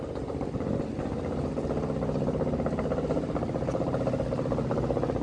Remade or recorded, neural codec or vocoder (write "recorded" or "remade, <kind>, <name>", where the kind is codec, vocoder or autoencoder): recorded